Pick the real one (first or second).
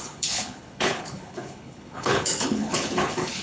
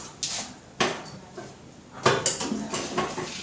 second